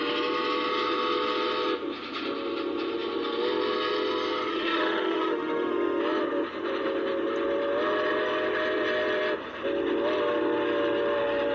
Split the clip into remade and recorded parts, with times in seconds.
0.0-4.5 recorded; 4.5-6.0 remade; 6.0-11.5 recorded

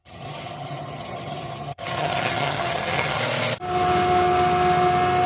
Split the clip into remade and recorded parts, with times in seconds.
0.0-3.2 remade; 3.2-5.3 recorded

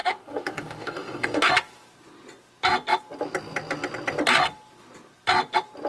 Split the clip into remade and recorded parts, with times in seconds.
0.0-1.5 remade; 1.5-5.9 recorded

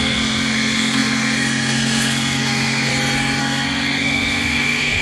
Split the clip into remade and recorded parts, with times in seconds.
0.0-2.9 remade; 2.9-3.4 recorded; 3.4-5.0 remade

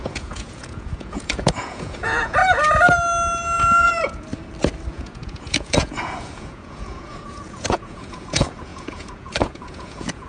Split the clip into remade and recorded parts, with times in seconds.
0.0-2.4 remade; 2.4-3.8 recorded; 3.8-4.3 remade; 4.3-4.9 recorded; 4.9-10.3 remade

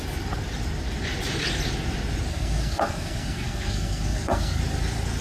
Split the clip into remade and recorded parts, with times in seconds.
0.0-2.3 recorded; 2.3-4.6 remade; 4.6-5.2 recorded

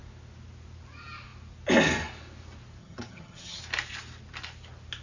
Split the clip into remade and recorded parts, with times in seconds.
0.0-2.8 recorded; 2.8-3.6 remade; 3.6-5.0 recorded